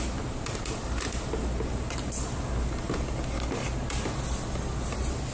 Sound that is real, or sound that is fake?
real